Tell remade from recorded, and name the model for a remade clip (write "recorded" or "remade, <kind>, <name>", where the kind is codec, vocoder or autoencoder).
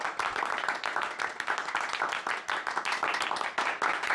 recorded